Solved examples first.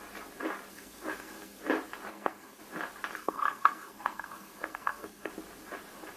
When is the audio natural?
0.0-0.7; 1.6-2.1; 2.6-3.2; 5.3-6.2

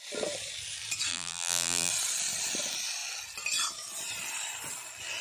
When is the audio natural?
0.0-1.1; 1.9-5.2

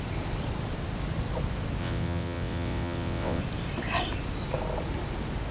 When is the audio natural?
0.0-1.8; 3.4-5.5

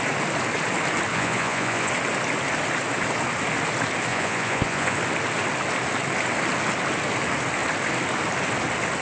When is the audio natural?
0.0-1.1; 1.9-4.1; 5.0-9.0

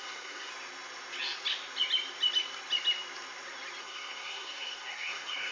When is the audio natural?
0.5-3.8

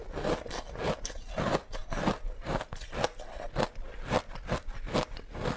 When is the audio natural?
0.0-5.6